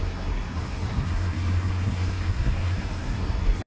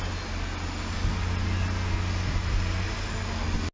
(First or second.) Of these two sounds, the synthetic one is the first